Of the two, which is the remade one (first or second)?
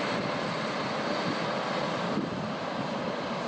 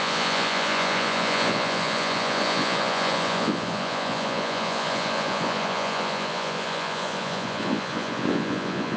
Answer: second